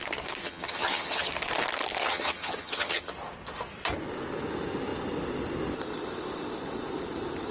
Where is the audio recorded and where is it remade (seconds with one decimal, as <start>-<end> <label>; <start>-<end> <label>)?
0.0-0.4 recorded; 0.4-1.3 remade; 1.3-2.0 recorded; 2.0-3.1 remade; 3.1-7.5 recorded